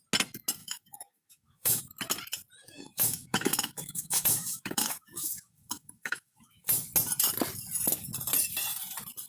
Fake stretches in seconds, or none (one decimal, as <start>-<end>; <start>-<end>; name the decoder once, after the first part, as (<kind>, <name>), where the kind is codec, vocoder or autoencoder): 0.6-1.8 (autoencoder, DAC-VAE); 2.6-6.7